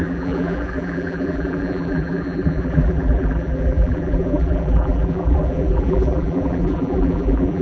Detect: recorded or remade remade